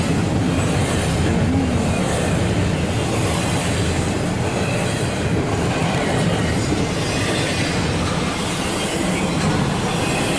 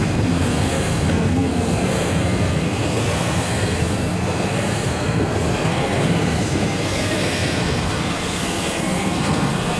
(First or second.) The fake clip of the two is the second